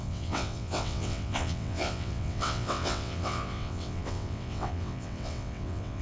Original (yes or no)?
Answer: no